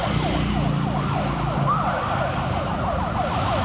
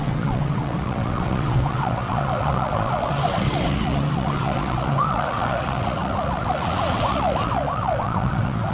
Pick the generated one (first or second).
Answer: second